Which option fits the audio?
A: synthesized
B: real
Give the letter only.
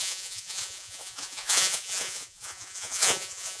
A